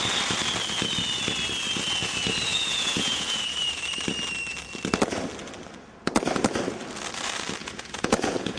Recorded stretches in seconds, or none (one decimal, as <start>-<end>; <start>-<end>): 0.0-2.5; 3.8-7.6